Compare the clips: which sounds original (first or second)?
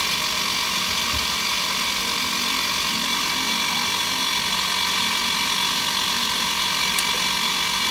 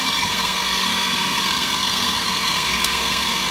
first